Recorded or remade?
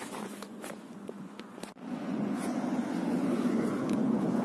remade